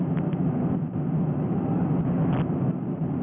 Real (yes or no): yes